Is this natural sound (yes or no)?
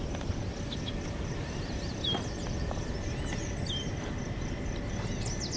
yes